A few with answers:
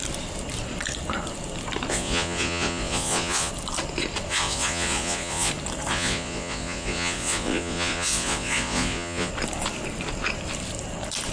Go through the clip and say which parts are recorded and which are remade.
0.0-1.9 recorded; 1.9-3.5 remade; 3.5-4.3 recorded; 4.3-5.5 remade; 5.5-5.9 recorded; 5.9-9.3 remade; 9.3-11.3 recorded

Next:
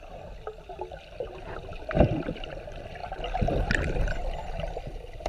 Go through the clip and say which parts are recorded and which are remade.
0.0-5.3 recorded

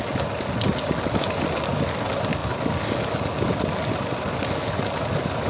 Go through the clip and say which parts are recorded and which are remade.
0.0-5.5 recorded

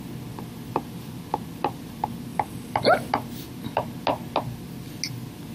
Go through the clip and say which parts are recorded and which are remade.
0.0-2.3 recorded; 2.3-3.1 remade; 3.1-5.5 recorded

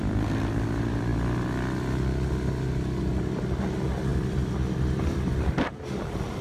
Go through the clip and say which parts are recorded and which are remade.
0.0-4.1 recorded; 4.1-5.3 remade; 5.3-6.4 recorded